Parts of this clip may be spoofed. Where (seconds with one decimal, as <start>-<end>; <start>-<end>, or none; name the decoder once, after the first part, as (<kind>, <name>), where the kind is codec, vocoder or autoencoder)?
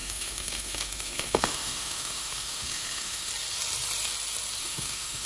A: 0.0-3.3 (autoencoder, DAC-VAE); 4.6-5.3